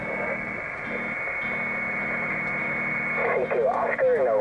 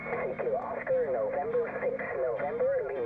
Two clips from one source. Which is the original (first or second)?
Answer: first